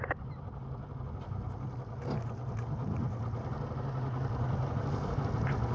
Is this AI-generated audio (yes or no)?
no